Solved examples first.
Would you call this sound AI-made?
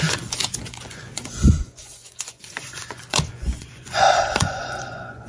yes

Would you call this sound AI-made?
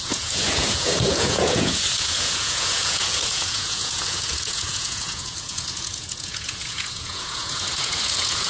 yes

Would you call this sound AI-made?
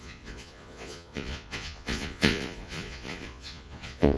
yes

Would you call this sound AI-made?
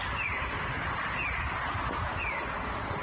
no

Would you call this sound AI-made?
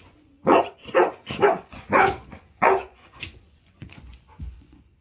yes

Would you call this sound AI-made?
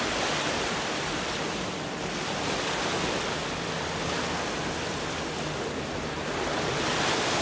no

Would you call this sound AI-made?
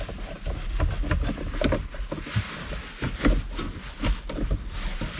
no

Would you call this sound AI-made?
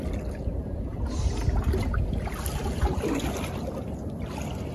no